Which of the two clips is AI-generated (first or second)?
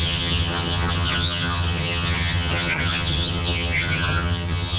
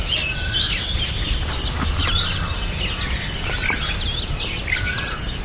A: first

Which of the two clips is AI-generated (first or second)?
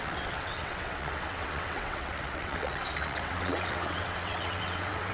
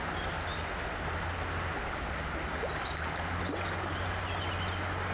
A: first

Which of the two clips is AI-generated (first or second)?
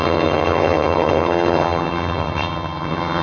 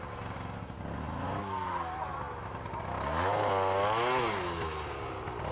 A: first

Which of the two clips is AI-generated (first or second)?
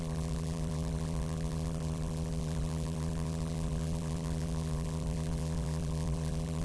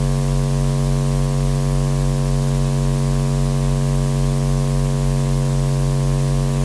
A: first